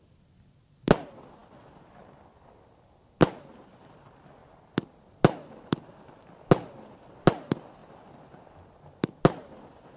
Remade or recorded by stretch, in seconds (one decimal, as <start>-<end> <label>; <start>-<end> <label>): 0.0-10.0 recorded